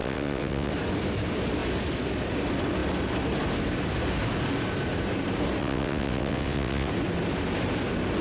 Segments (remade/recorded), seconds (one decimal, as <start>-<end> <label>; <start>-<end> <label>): 0.0-0.7 remade; 0.7-5.6 recorded; 5.6-6.9 remade; 6.9-8.2 recorded